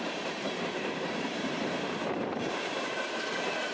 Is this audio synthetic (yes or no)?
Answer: yes